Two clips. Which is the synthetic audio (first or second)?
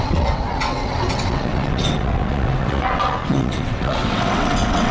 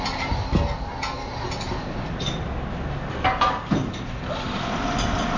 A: first